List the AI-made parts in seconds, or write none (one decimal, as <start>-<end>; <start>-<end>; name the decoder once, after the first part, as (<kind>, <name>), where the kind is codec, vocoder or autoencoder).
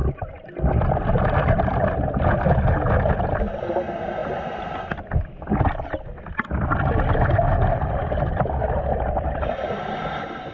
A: 0.0-0.5 (vocoder, BigVGAN v2)